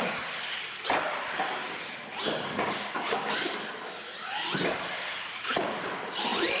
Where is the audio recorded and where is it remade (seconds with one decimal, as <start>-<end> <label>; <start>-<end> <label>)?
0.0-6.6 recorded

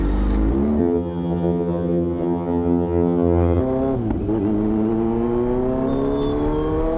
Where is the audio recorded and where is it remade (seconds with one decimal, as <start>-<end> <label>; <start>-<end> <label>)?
0.0-0.8 recorded; 0.8-3.6 remade; 3.6-7.0 recorded

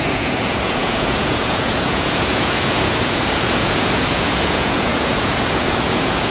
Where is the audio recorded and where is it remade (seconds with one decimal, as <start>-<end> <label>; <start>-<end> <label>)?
0.0-6.3 remade